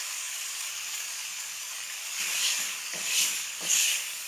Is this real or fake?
fake